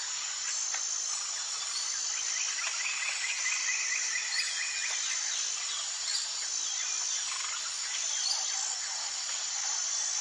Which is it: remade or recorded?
recorded